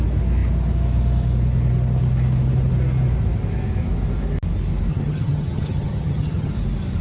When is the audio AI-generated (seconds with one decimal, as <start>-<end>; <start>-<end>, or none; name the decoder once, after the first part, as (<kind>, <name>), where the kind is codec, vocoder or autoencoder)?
4.9-6.5 (vocoder, HiFi-GAN)